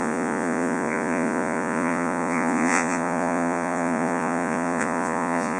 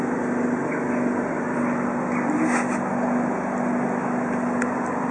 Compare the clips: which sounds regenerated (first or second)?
first